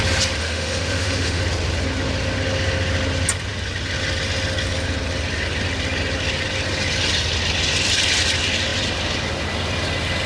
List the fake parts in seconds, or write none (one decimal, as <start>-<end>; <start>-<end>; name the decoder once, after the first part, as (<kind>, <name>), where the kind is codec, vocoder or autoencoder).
0.4-1.4 (autoencoder, DAC-VAE)